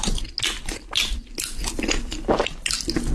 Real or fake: real